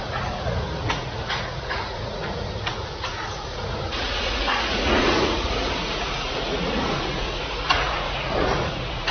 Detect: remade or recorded remade